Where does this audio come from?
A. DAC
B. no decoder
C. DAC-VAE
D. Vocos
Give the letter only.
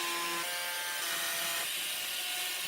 B